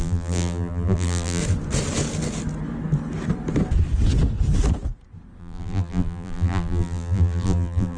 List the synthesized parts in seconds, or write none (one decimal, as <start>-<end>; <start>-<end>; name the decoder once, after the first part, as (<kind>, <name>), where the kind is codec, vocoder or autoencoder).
0.0-1.4 (vocoder, BigVGAN v2); 5.4-8.0